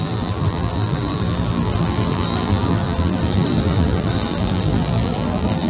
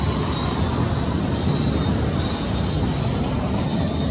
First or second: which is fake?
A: first